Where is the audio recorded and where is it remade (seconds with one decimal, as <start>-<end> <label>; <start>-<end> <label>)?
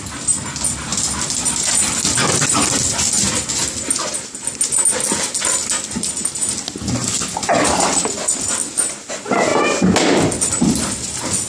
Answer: 0.0-11.5 recorded